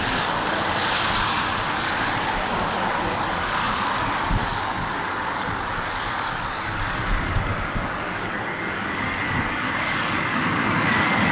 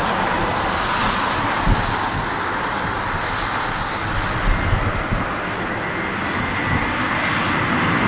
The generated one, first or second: first